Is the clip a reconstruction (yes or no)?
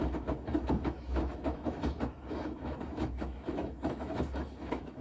yes